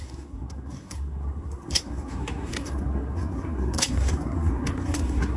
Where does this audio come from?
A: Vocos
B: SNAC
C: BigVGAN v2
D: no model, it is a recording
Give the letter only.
B